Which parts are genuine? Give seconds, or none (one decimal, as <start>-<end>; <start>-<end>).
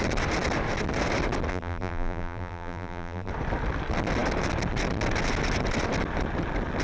0.0-1.5; 3.3-6.8